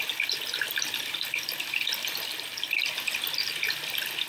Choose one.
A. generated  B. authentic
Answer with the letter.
B